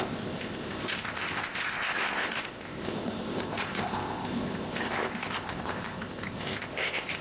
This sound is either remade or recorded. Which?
remade